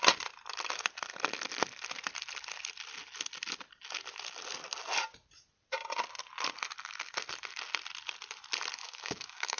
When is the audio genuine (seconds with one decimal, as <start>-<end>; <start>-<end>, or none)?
0.0-8.8